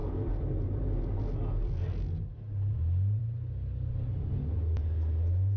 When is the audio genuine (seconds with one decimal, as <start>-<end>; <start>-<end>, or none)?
0.0-5.6